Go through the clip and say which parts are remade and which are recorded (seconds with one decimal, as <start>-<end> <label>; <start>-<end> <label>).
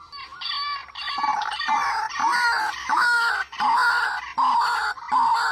0.0-2.8 recorded; 2.8-3.3 remade; 3.3-5.5 recorded